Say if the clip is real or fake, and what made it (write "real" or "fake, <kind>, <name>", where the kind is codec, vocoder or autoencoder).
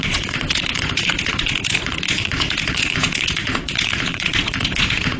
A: fake, vocoder, Vocos